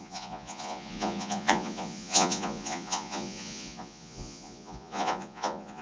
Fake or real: fake